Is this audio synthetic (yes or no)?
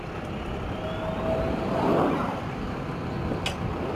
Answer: no